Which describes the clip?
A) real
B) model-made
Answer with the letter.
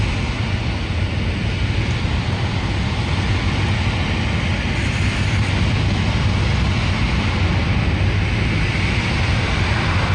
A